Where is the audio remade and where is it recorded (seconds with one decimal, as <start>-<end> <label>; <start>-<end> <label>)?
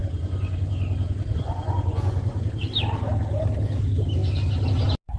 0.0-0.7 remade; 0.7-1.3 recorded; 1.3-2.5 remade; 2.5-5.2 recorded